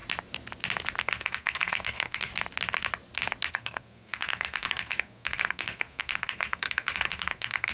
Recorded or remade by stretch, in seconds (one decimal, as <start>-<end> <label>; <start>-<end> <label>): 0.0-1.0 recorded; 1.0-2.3 remade; 2.3-3.5 recorded; 3.5-7.7 remade